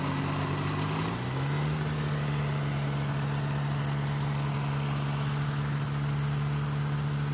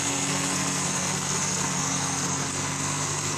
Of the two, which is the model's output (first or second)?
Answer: second